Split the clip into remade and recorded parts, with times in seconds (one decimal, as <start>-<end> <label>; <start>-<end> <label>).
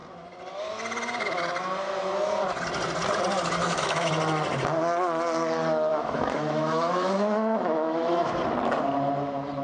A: 0.0-3.6 recorded; 3.6-4.1 remade; 4.1-5.9 recorded; 5.9-8.3 remade; 8.3-9.6 recorded